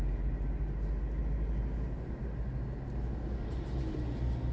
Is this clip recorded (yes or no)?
yes